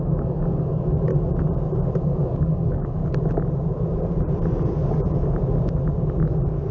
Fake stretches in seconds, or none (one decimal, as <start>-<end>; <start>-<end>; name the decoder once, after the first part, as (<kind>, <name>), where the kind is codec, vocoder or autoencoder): 0.0-1.1 (codec, DAC); 2.0-3.0